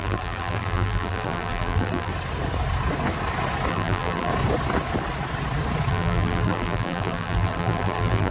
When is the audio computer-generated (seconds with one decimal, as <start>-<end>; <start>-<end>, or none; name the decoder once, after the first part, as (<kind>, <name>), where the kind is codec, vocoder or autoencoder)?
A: 0.0-2.1 (vocoder, BigVGAN v2); 3.7-4.3; 5.9-8.3